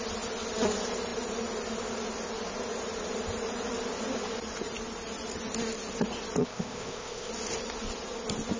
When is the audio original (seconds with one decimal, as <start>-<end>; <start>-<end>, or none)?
0.0-6.4; 7.3-8.6